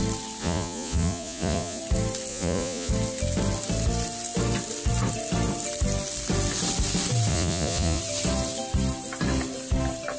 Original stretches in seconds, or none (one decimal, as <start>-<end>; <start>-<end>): 0.0-0.4; 1.8-2.3; 2.9-7.3; 8.0-10.2